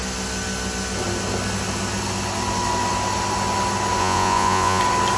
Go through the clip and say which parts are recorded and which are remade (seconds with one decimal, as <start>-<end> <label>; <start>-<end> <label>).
0.0-4.0 recorded; 4.0-4.8 remade; 4.8-5.2 recorded